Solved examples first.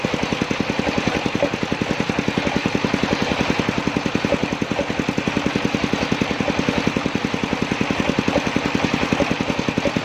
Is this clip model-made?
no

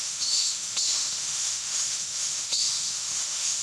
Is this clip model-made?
yes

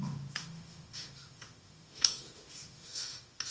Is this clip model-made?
yes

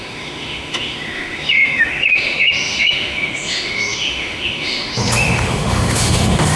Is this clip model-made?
yes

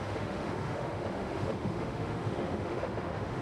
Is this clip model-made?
yes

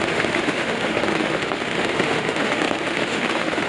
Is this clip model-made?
yes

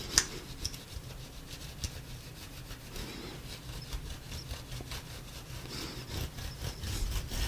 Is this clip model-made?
no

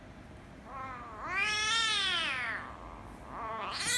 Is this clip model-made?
no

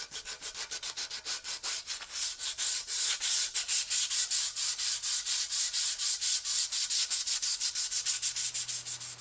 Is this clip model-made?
no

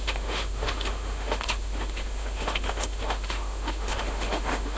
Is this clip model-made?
yes